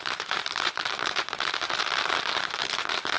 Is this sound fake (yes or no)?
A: yes